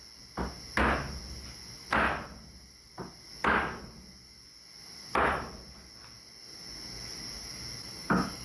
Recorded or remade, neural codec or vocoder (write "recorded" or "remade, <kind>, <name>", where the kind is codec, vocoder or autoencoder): recorded